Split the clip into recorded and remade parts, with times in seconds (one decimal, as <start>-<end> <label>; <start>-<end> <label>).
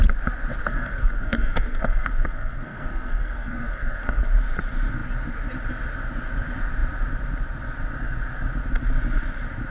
0.0-0.6 recorded; 0.6-4.2 remade; 4.2-9.7 recorded